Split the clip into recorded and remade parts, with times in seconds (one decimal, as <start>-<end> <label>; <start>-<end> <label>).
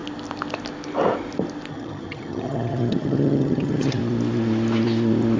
0.0-1.7 recorded; 1.7-4.0 remade; 4.0-5.4 recorded